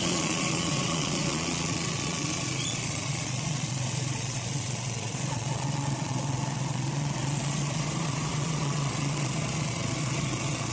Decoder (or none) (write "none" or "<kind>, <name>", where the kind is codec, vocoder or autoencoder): vocoder, Vocos